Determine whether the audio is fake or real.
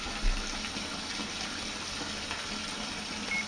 real